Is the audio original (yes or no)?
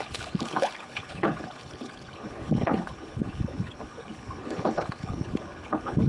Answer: no